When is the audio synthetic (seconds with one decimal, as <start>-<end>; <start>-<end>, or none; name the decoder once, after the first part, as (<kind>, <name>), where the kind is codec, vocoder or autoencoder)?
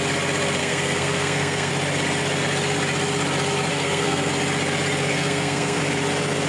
0.6-1.7 (codec, SNAC); 3.7-4.3; 5.1-5.8